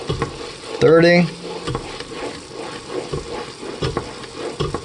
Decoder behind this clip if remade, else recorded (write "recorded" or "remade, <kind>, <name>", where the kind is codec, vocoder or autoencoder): recorded